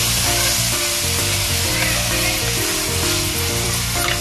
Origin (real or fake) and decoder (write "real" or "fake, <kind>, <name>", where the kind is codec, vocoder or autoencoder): real